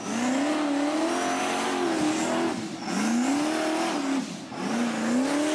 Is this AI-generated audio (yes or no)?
no